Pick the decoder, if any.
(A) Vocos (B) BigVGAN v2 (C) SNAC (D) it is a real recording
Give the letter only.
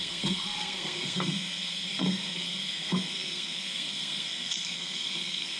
C